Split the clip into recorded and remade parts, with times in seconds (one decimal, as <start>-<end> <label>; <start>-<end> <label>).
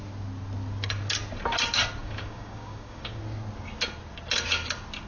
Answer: 0.0-2.0 recorded; 2.0-3.2 remade; 3.2-5.1 recorded